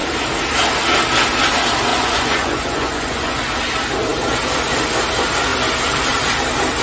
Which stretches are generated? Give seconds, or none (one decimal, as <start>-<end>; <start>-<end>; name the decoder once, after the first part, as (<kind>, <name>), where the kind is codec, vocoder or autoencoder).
1.9-3.4 (vocoder, Vocos)